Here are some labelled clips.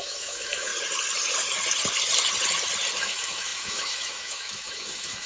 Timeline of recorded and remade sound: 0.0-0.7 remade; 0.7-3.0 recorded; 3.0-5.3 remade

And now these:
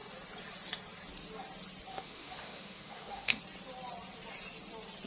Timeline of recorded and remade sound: 0.0-1.9 recorded; 1.9-3.4 remade; 3.4-5.1 recorded

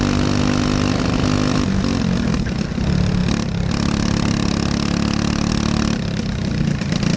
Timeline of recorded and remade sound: 0.0-7.2 recorded

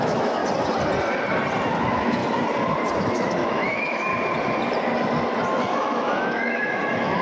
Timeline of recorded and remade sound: 0.0-0.4 remade; 0.4-1.7 recorded; 1.7-2.2 remade; 2.2-3.0 recorded; 3.0-4.1 remade; 4.1-5.6 recorded; 5.6-7.2 remade

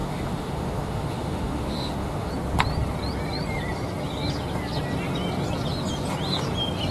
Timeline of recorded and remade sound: 0.0-2.3 remade; 2.3-6.9 recorded

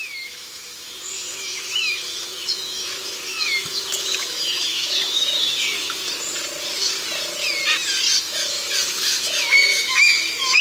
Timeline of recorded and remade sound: 0.0-6.0 remade; 6.0-8.2 recorded; 8.2-10.6 remade

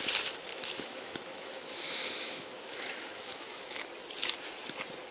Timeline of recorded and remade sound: 0.0-0.5 recorded; 0.5-3.6 remade; 3.6-5.1 recorded

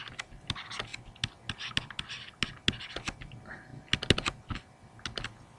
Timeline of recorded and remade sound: 0.0-5.6 recorded